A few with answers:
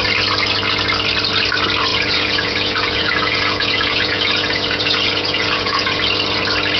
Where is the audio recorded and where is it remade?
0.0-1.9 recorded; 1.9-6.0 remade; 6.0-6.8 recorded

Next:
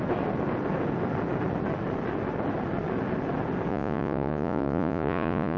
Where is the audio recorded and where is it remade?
0.0-3.7 recorded; 3.7-5.6 remade

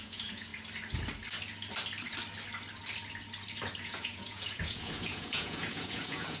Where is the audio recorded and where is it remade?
0.0-0.5 remade; 0.5-3.8 recorded; 3.8-6.4 remade

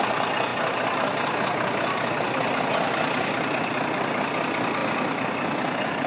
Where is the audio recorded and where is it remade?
0.0-6.1 recorded

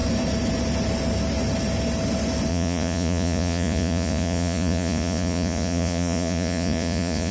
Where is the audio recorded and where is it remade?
0.0-2.5 recorded; 2.5-7.3 remade